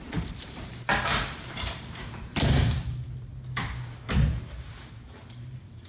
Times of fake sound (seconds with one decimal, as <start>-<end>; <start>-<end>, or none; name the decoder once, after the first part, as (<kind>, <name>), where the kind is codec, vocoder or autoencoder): 0.0-3.3 (vocoder, BigVGAN v2); 4.7-5.9